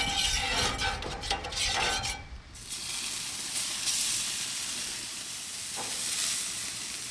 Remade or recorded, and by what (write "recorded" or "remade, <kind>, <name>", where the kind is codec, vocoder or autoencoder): recorded